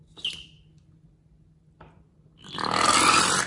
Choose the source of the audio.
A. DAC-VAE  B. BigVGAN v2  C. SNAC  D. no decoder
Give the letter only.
D